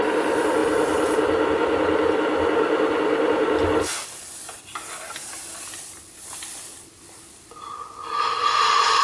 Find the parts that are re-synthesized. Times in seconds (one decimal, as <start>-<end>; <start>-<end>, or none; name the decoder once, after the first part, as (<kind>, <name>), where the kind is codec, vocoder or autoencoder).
none